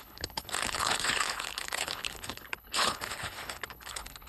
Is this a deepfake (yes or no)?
yes